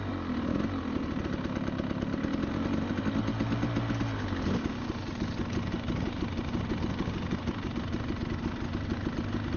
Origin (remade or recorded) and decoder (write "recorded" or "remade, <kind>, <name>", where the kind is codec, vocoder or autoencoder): recorded